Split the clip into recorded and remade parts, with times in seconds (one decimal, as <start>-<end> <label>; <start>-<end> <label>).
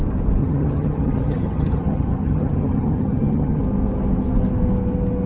0.0-0.4 recorded; 0.4-3.6 remade; 3.6-5.3 recorded